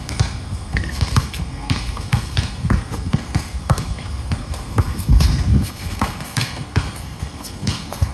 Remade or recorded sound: remade